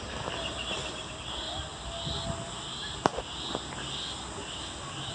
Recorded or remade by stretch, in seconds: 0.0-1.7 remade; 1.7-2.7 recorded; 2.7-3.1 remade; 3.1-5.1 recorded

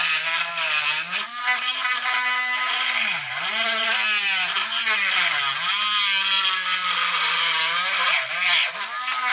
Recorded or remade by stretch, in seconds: 0.0-3.0 recorded; 3.0-3.9 remade; 3.9-9.3 recorded

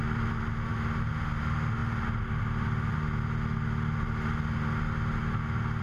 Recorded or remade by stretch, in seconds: 0.0-5.8 recorded

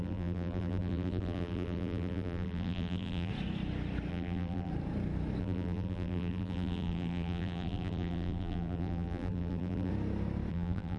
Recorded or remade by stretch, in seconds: 0.0-3.3 remade; 3.3-4.1 recorded; 4.1-4.7 remade; 4.7-5.4 recorded; 5.4-9.9 remade; 9.9-10.5 recorded; 10.5-11.0 remade

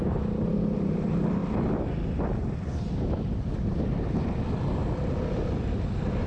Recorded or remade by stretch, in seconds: 0.0-6.3 recorded

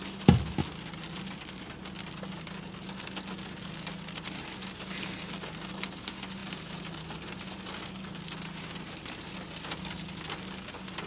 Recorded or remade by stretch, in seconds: 0.0-6.4 recorded; 6.4-7.0 remade; 7.0-11.1 recorded